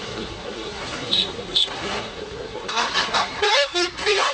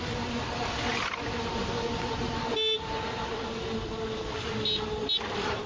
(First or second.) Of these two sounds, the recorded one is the second